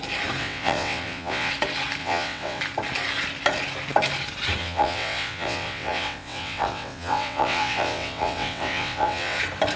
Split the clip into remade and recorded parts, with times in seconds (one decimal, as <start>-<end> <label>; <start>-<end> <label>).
0.0-0.4 recorded; 0.4-1.5 remade; 1.5-2.0 recorded; 2.0-2.6 remade; 2.6-4.6 recorded; 4.6-9.4 remade; 9.4-9.8 recorded